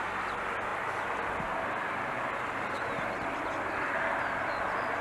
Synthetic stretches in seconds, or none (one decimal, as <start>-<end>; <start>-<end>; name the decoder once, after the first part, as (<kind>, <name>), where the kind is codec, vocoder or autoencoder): none

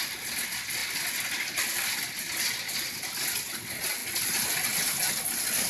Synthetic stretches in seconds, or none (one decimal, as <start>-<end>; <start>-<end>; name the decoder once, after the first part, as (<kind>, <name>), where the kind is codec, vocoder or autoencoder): none

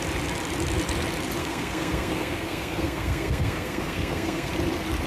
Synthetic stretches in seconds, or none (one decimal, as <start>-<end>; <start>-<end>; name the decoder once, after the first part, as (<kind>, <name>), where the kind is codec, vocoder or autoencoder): 1.4-4.5 (codec, SNAC)

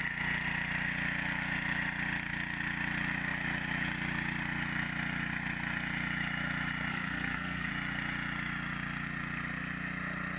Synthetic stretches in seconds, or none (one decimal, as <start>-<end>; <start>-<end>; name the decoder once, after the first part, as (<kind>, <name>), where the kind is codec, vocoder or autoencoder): 6.9-7.7 (codec, SNAC)

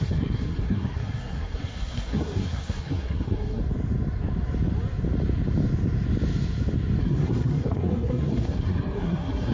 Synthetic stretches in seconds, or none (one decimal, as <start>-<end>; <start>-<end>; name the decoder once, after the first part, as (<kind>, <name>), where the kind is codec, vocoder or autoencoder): 0.0-3.6 (codec, SNAC); 7.0-9.5

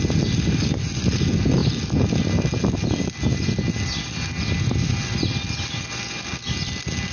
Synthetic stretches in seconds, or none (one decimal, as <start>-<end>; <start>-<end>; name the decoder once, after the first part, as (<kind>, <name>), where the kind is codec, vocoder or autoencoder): none

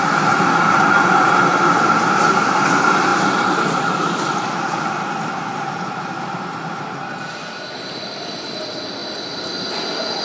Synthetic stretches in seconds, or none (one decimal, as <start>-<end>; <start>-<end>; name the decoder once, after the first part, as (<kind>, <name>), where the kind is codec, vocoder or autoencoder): none

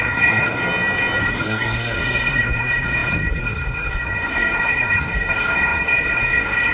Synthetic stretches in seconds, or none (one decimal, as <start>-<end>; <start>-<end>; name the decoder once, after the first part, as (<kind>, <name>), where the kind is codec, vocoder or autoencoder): 0.0-0.6 (codec, SNAC); 1.2-6.7